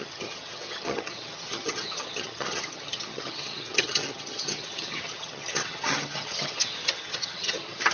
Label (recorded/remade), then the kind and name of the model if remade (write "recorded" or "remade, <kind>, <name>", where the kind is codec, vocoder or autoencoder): remade, vocoder, HiFi-GAN